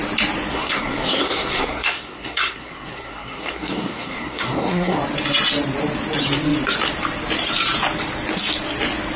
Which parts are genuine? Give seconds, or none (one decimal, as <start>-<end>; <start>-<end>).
0.0-0.5; 5.0-9.2